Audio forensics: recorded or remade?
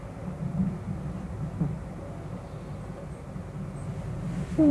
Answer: recorded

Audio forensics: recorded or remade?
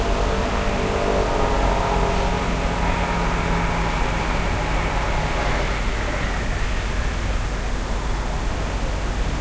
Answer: recorded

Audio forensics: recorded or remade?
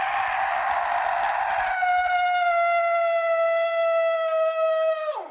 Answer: recorded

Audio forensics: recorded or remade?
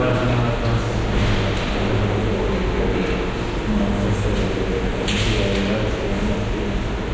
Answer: recorded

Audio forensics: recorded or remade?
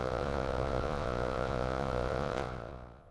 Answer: remade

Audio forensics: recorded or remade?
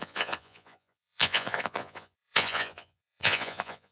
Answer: remade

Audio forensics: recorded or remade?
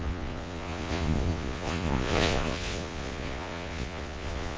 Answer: remade